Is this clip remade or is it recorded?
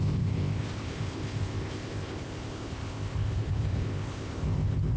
remade